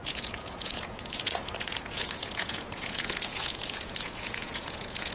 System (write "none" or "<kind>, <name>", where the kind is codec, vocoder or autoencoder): vocoder, Vocos